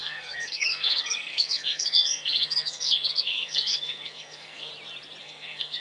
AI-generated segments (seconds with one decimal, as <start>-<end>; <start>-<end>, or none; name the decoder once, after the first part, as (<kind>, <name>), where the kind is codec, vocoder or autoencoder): 0.0-4.7 (codec, SNAC); 5.2-5.8